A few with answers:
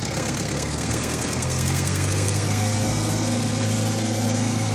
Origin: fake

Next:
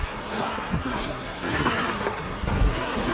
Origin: fake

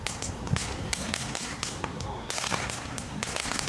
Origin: fake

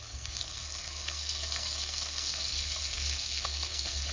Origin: fake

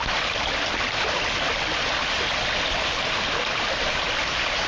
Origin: real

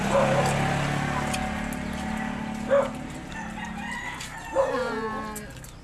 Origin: real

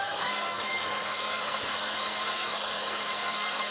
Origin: fake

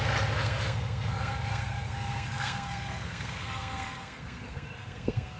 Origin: fake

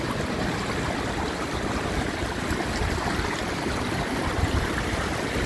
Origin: real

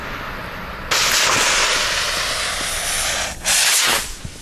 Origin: real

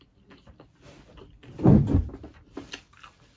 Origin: real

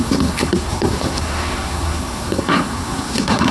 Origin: fake